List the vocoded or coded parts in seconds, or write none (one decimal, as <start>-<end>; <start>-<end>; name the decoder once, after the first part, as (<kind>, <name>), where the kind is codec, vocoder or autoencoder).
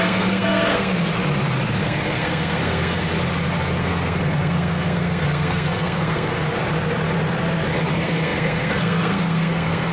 0.0-0.9 (codec, SNAC); 1.8-3.1; 3.8-6.3; 7.9-9.9